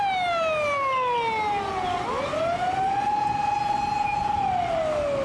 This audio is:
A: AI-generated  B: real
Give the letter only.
B